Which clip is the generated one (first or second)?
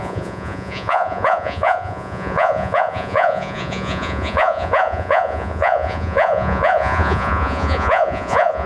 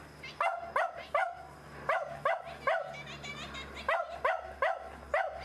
first